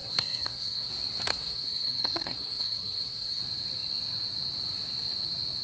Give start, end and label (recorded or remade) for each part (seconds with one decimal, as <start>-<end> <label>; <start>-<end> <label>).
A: 0.0-0.9 remade; 0.9-1.3 recorded; 1.3-3.4 remade; 3.4-5.6 recorded